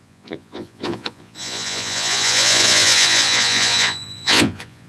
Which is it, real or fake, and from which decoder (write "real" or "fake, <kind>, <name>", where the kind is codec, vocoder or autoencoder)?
fake, vocoder, Vocos